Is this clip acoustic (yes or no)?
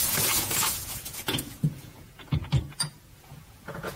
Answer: no